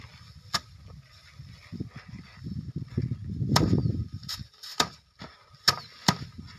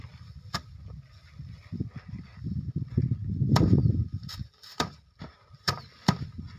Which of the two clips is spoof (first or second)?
second